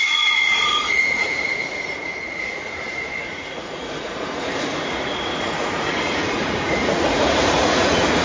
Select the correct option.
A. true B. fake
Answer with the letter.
B